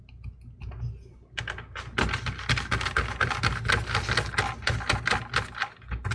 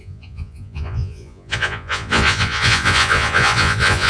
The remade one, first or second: second